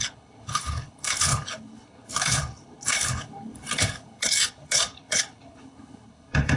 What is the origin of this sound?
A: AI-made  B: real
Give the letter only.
A